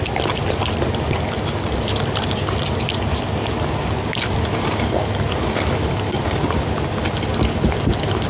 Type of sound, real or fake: real